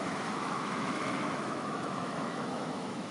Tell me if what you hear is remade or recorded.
remade